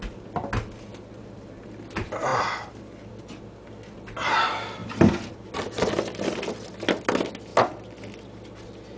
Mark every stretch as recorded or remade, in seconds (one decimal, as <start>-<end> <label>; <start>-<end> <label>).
0.0-0.9 recorded; 0.9-1.6 remade; 1.6-2.3 recorded; 2.3-3.1 remade; 3.1-9.0 recorded